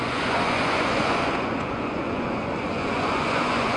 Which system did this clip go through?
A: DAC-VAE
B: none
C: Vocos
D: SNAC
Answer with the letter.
C